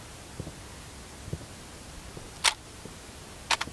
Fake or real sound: real